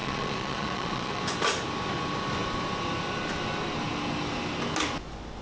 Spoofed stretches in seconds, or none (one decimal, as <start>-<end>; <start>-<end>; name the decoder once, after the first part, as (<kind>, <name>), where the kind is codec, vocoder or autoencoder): 0.0-1.2 (vocoder, Vocos)